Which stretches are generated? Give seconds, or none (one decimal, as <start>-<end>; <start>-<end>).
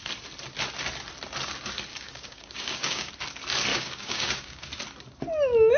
1.9-3.1; 3.7-4.6